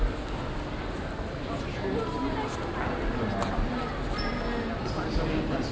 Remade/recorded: recorded